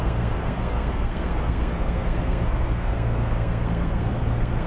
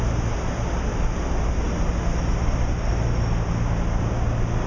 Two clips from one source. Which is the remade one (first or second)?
first